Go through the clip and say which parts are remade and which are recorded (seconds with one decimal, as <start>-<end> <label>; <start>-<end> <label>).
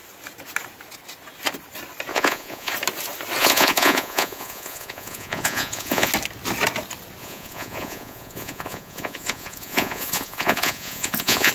0.0-2.1 recorded; 2.1-2.7 remade; 2.7-3.4 recorded; 3.4-6.1 remade; 6.1-7.2 recorded; 7.2-11.5 remade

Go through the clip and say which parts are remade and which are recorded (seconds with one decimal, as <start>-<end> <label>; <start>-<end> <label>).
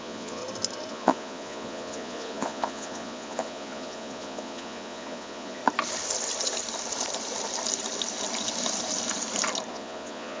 0.0-0.4 remade; 0.4-0.9 recorded; 0.9-5.6 remade; 5.6-9.7 recorded; 9.7-10.4 remade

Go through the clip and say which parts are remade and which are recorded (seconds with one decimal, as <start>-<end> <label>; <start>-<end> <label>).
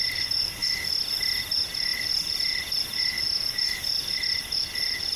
0.0-5.2 recorded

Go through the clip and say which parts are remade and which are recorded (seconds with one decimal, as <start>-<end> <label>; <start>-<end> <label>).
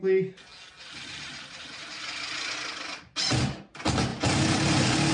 0.0-5.1 recorded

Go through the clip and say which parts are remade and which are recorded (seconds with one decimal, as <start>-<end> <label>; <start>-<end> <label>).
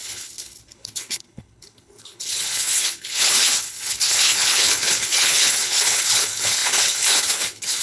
0.0-7.8 remade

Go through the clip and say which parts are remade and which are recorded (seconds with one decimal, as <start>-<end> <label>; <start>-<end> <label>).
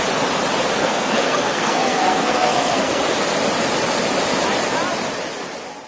0.0-0.8 recorded; 0.8-3.0 remade; 3.0-5.9 recorded